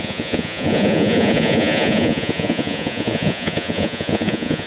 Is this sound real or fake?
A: fake